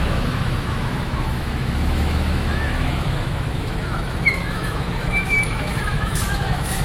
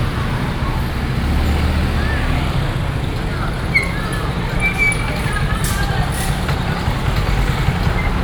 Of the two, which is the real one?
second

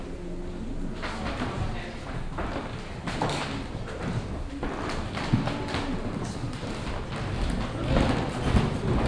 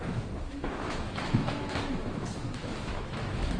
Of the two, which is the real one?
first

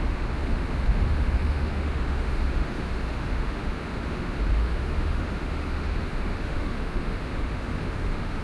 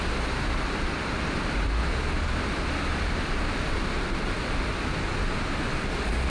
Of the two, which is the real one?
second